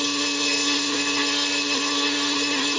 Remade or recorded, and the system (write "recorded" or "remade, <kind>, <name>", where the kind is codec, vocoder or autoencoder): remade, codec, SNAC